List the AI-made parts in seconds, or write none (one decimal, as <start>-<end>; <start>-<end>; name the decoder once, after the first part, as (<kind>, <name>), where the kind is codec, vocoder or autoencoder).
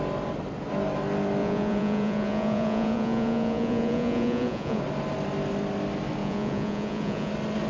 1.4-4.8 (vocoder, Vocos); 6.2-7.3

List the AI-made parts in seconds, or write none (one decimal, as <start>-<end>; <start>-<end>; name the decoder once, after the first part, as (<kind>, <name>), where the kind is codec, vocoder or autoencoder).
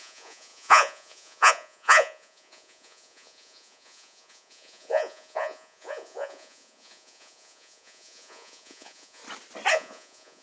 0.0-9.2 (vocoder, Vocos); 9.7-10.4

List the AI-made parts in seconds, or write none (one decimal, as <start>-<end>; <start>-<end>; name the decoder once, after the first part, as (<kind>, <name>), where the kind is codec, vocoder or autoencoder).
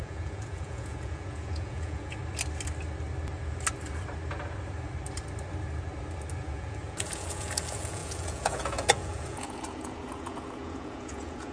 0.0-2.2 (vocoder, Vocos); 6.4-11.5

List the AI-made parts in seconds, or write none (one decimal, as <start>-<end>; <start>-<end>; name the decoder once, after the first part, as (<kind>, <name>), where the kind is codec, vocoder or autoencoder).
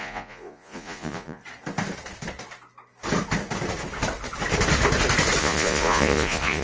0.0-1.4 (vocoder, Vocos); 5.4-6.6